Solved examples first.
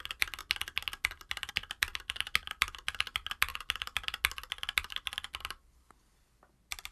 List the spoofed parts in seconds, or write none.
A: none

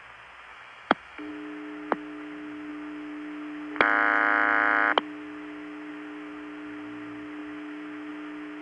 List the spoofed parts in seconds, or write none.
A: 0.5-1.3

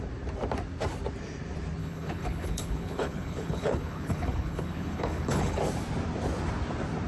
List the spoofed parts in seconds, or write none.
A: 1.8-5.6

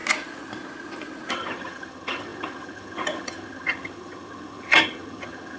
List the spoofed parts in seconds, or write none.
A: 1.3-5.6

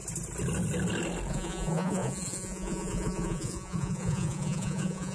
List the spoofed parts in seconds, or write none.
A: 1.3-5.1

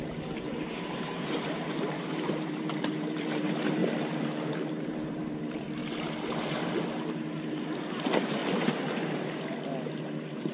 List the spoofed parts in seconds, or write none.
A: 0.0-3.8; 4.5-5.8; 7.0-8.4; 9.9-10.5

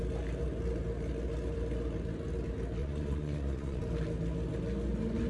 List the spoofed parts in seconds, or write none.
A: 2.8-3.8